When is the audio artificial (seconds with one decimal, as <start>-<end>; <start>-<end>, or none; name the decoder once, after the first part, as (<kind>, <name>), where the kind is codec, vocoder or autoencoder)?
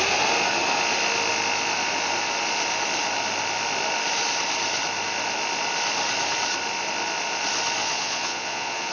7.8-8.9 (vocoder, Vocos)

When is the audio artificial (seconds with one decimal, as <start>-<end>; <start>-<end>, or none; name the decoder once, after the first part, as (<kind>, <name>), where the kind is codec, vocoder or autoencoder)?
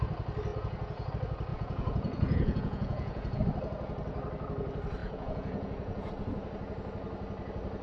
0.5-1.1 (vocoder, Vocos); 1.5-3.4; 5.0-6.1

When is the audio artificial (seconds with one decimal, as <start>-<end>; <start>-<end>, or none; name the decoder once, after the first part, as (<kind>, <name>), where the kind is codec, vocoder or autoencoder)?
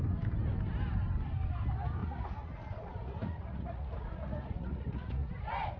2.0-5.3 (vocoder, Vocos)